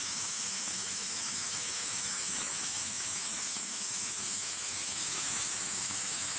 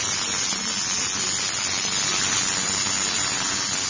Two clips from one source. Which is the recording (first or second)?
second